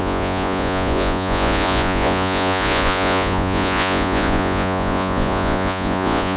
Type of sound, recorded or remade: remade